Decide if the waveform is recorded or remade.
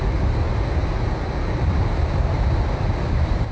recorded